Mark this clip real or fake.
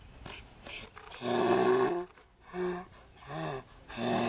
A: real